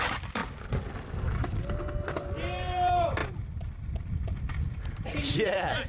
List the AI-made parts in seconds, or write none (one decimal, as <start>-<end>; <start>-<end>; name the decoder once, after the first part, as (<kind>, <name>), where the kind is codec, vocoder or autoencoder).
0.0-0.4 (vocoder, BigVGAN v2); 2.4-3.2; 4.1-5.9